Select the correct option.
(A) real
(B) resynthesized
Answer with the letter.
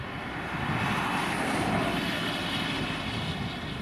A